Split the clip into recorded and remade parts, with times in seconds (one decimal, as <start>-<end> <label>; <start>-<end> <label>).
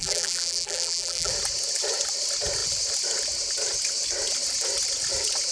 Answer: 0.0-1.3 remade; 1.3-5.5 recorded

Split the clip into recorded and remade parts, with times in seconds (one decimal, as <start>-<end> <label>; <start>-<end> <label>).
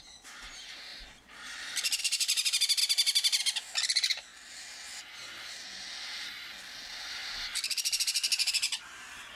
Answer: 0.0-9.4 recorded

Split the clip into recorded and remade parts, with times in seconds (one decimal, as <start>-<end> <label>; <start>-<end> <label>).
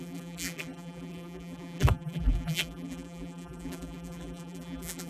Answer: 0.0-5.1 remade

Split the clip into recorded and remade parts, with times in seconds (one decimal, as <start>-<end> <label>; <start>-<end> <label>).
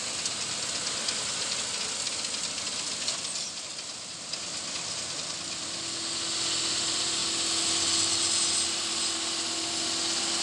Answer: 0.0-10.4 recorded